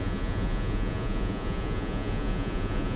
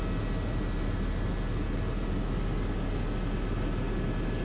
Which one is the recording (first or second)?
second